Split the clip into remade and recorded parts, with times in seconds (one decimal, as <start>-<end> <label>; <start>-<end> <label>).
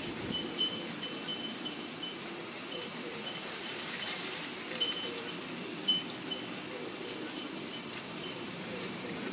0.0-1.3 remade; 1.3-2.1 recorded; 2.1-4.5 remade; 4.5-7.5 recorded; 7.5-9.3 remade